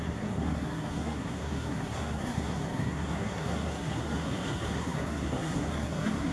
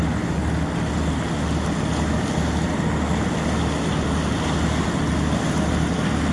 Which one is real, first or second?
second